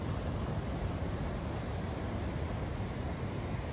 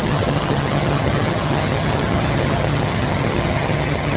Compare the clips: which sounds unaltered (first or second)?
first